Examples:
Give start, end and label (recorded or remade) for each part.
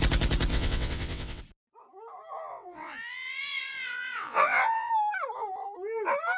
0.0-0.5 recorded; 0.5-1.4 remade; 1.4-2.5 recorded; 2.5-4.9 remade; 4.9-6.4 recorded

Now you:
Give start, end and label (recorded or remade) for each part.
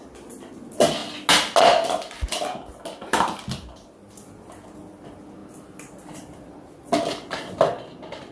0.0-8.3 recorded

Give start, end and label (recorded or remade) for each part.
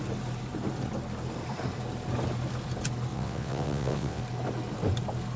0.0-3.1 recorded; 3.1-4.2 remade; 4.2-5.4 recorded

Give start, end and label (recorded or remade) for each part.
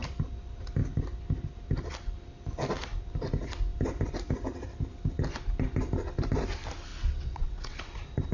0.0-6.9 recorded; 6.9-7.8 remade; 7.8-8.3 recorded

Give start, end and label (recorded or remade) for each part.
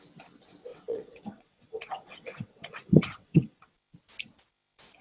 0.0-0.7 recorded; 0.7-3.7 remade; 3.7-5.0 recorded